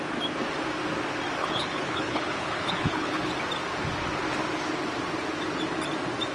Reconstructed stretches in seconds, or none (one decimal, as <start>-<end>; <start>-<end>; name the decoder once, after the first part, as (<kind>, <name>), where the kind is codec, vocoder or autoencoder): 1.4-3.3 (codec, HILCodec)

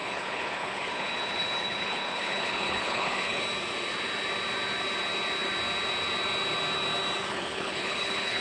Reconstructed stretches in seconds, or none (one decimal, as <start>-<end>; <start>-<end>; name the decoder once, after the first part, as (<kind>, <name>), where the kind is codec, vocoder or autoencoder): 0.0-3.4 (codec, HILCodec); 7.3-8.4

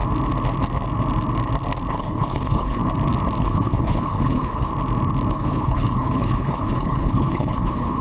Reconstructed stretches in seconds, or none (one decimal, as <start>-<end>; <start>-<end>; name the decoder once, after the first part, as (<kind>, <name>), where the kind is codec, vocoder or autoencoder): 1.9-2.8 (codec, HILCodec); 3.4-4.7; 5.3-8.0

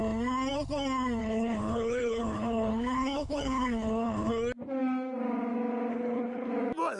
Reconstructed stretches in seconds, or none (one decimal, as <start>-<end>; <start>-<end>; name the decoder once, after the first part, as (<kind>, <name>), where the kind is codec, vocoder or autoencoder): 1.2-4.3 (codec, HILCodec); 5.9-6.5

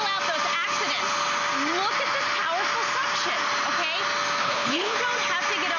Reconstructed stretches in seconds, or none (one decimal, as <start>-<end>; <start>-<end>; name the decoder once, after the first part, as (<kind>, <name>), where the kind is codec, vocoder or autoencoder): 4.4-5.0 (codec, HILCodec)

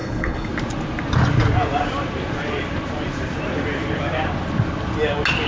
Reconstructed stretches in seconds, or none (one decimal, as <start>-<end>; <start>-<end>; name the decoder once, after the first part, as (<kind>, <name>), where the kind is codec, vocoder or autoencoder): 0.0-0.5 (codec, HILCodec)

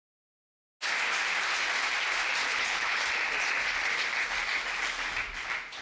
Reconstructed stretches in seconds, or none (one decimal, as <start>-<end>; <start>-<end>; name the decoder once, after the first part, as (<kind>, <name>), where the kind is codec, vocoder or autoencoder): 2.4-3.0 (codec, HILCodec)

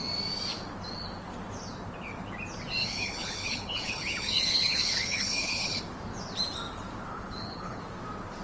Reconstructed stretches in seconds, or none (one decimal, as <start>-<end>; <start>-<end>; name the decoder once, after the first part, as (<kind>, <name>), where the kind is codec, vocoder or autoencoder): 2.8-5.8 (codec, HILCodec); 7.1-7.8